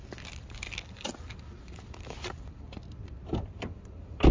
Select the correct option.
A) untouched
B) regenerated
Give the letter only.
A